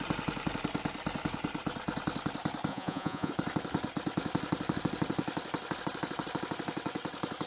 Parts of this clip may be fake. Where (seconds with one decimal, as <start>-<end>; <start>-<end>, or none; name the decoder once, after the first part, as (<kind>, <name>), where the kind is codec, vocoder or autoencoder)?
2.7-3.3 (vocoder, Vocos)